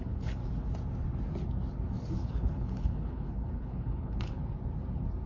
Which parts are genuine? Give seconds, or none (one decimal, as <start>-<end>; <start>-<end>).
0.4-2.1; 4.4-5.3